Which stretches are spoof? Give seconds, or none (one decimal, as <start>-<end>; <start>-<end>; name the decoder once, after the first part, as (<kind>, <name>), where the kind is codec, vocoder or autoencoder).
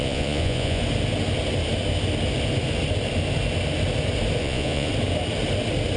0.0-0.8 (vocoder, Vocos); 4.4-4.9